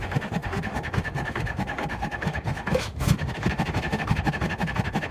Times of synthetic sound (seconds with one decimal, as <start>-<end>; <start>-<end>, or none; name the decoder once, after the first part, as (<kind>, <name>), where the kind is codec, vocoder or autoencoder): 0.0-5.1 (autoencoder, DAC-VAE)

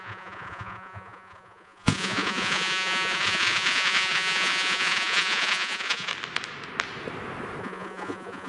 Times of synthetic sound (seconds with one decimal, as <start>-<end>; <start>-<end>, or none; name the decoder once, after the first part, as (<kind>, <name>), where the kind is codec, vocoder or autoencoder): 0.0-6.1 (vocoder, Vocos); 7.6-8.5

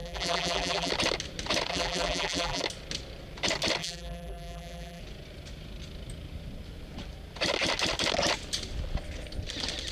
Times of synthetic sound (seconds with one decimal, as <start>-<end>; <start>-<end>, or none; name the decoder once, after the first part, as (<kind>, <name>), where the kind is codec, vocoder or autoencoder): 0.0-0.9 (vocoder, BigVGAN v2); 1.7-2.6; 3.8-5.0

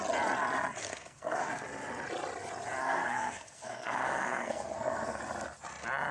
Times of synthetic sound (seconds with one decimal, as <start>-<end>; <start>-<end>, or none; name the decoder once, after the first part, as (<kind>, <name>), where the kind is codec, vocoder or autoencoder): 0.8-1.5 (codec, SNAC); 2.8-5.2

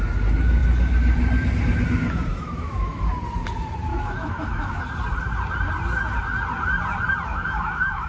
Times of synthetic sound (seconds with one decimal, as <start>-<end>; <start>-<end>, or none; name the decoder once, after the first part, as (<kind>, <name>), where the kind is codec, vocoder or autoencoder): 2.3-3.0 (autoencoder, DAC-VAE); 3.9-4.8; 7.3-8.1

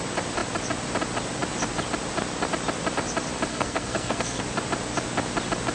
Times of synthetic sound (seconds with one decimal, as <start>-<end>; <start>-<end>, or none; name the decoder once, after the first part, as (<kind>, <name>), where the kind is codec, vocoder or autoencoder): 3.5-4.4 (codec, SNAC)